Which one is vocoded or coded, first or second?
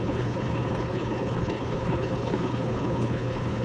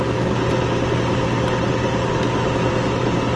first